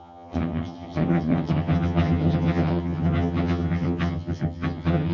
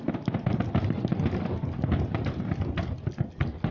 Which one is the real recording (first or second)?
second